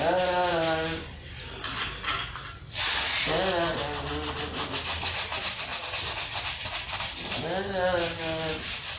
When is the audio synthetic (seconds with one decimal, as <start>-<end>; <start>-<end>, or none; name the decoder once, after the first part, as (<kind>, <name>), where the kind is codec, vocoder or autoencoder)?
none